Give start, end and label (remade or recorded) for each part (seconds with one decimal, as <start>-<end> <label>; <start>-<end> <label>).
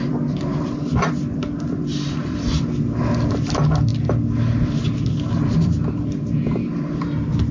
0.0-3.9 remade; 3.9-4.6 recorded; 4.6-7.5 remade